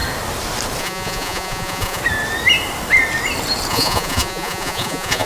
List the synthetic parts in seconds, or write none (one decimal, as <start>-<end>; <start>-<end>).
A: 0.8-2.0; 3.7-5.3

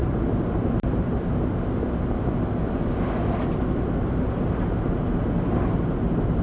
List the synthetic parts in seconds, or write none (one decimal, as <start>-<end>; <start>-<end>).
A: none

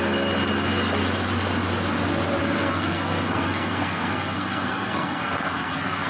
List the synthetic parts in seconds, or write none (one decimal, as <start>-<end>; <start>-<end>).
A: 2.4-6.1